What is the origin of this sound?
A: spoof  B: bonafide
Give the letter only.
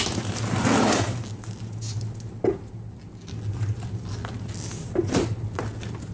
B